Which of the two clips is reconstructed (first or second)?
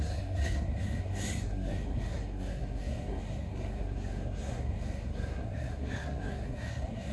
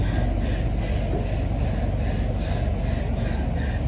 first